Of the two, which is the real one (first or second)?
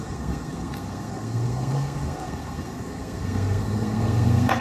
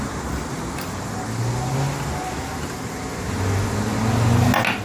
second